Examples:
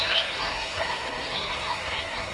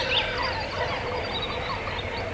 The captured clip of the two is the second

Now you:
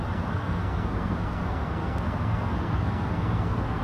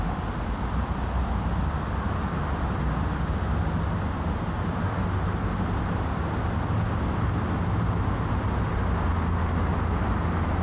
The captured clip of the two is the second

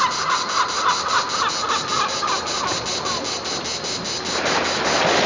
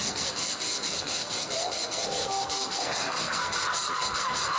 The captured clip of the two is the first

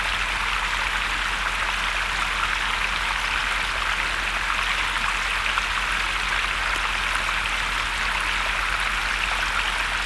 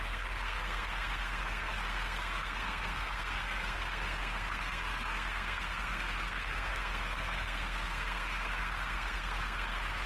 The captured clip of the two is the first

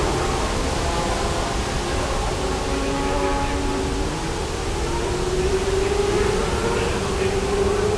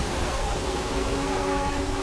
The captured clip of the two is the first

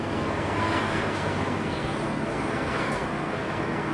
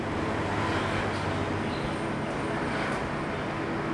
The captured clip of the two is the second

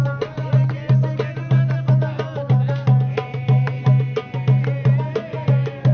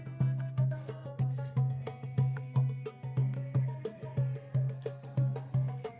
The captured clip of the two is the first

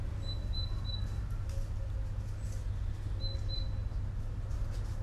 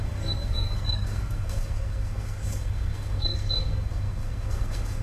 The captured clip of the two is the first